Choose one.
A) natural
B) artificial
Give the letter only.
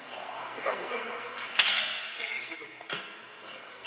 B